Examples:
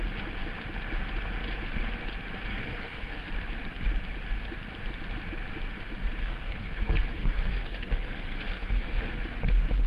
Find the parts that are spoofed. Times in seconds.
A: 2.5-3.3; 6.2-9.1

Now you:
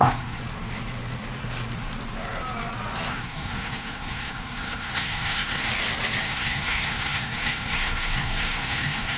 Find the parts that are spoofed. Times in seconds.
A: 0.0-0.4; 3.1-5.7; 6.2-9.2

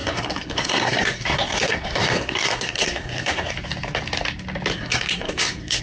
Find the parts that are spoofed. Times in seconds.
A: 0.0-3.5; 4.7-5.8

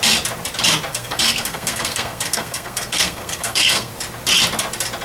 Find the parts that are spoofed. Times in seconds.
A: 0.9-3.9

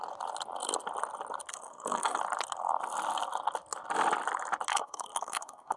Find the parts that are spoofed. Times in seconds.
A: 1.5-2.2; 4.7-5.8